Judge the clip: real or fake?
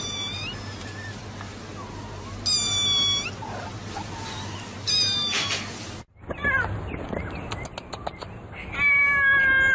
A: real